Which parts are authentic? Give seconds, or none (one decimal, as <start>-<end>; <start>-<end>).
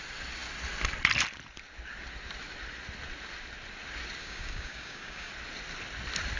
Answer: 0.0-4.2; 5.3-6.4